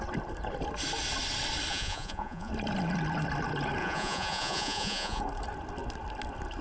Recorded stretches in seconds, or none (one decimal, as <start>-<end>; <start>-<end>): 0.0-1.7; 2.5-3.8; 5.2-6.6